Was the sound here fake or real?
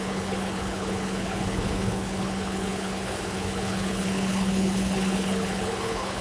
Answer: fake